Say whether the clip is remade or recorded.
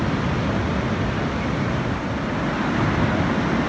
recorded